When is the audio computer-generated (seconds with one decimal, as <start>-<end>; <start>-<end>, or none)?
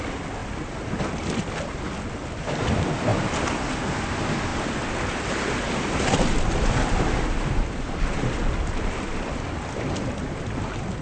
none